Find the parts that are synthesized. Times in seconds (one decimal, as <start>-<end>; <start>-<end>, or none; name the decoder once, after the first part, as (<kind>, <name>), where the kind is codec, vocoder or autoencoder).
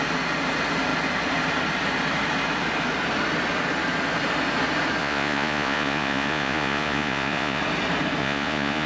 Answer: 5.0-7.6 (vocoder, Vocos); 8.2-8.9